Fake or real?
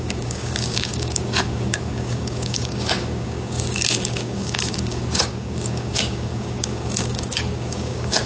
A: fake